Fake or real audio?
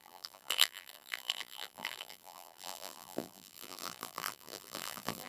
fake